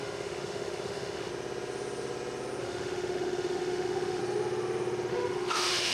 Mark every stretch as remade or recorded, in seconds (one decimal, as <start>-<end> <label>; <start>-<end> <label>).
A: 0.0-1.3 remade; 1.3-2.6 recorded; 2.6-4.2 remade; 4.2-5.1 recorded; 5.1-5.9 remade